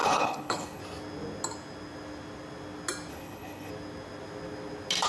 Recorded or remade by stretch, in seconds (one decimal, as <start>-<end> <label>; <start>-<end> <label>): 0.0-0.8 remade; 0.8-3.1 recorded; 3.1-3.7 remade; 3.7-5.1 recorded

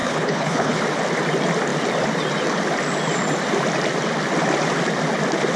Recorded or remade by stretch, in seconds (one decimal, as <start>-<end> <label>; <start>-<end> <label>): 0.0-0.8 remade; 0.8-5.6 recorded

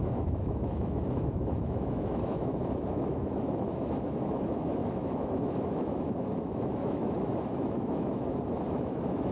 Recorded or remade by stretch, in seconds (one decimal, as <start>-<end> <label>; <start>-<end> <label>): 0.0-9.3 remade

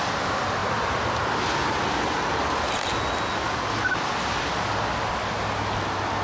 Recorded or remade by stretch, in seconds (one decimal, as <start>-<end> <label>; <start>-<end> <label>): 0.0-6.2 recorded

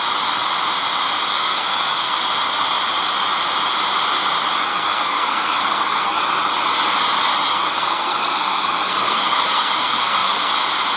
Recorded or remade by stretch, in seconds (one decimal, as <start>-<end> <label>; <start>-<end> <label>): 0.0-1.3 recorded; 1.3-2.2 remade; 2.2-4.7 recorded; 4.7-6.2 remade; 6.2-7.5 recorded; 7.5-10.5 remade; 10.5-11.0 recorded

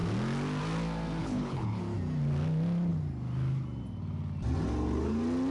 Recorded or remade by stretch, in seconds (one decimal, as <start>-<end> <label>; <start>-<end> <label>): 0.0-1.2 recorded; 1.2-1.8 remade; 1.8-5.5 recorded